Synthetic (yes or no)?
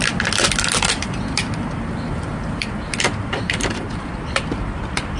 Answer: no